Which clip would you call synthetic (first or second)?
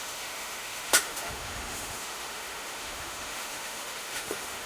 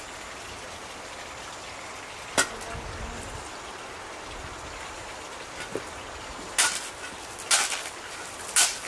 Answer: first